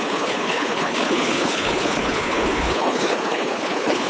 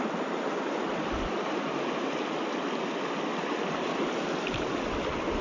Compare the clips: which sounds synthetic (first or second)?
first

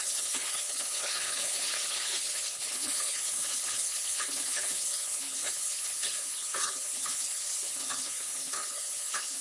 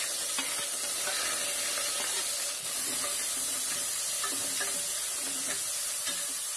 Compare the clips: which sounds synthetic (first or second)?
first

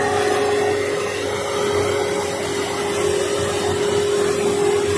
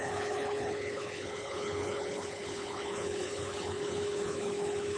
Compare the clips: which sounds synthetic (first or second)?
second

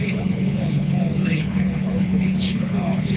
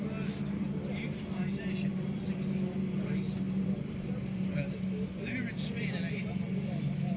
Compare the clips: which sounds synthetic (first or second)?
first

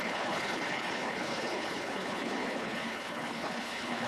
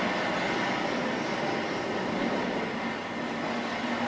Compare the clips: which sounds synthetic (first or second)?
first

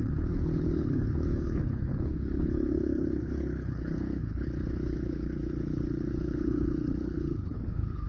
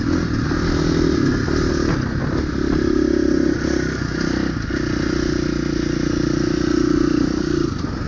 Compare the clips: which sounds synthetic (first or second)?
first